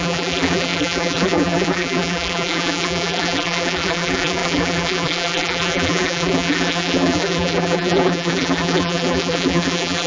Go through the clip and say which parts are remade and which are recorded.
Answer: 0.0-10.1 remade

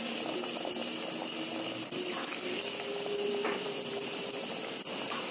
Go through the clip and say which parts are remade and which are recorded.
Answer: 0.0-5.3 recorded

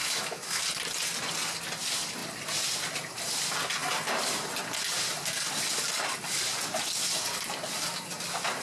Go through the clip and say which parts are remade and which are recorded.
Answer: 0.0-0.6 remade; 0.6-8.6 recorded

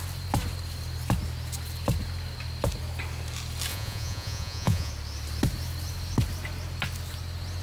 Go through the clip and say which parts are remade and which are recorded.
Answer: 0.0-3.7 recorded; 3.7-4.9 remade; 4.9-7.6 recorded

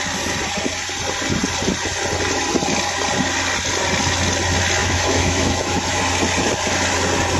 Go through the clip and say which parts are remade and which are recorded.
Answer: 0.0-4.8 recorded; 4.8-6.0 remade; 6.0-7.4 recorded

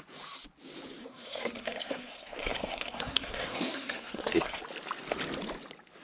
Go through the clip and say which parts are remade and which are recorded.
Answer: 0.0-1.0 recorded; 1.0-4.6 remade; 4.6-6.0 recorded